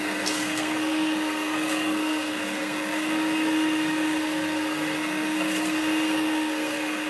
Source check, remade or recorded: remade